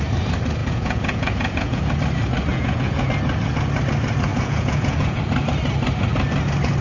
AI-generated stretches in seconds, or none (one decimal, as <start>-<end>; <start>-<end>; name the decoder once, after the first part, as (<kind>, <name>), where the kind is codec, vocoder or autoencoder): 0.6-1.8 (vocoder, Vocos); 2.5-3.1; 4.3-5.2